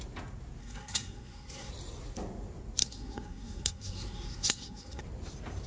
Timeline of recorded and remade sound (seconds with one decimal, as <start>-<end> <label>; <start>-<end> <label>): 0.0-0.6 recorded; 0.6-1.7 remade; 1.7-2.8 recorded; 2.8-5.0 remade; 5.0-5.7 recorded